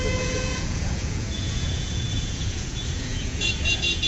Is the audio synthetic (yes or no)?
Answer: yes